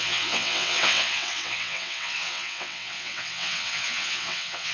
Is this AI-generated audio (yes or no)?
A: yes